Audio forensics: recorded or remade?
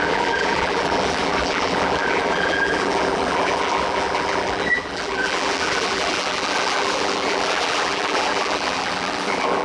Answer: remade